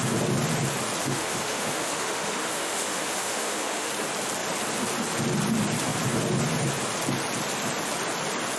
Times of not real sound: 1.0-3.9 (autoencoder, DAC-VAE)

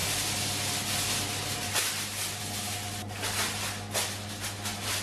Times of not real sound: none

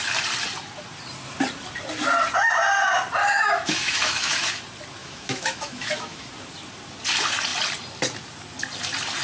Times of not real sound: 3.2-4.6 (autoencoder, DAC-VAE); 5.0-6.3